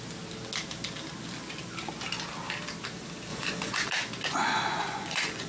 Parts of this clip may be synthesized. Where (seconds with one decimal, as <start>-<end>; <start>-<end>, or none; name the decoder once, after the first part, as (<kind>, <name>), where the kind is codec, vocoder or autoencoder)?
3.3-3.9 (vocoder, Vocos); 4.3-5.5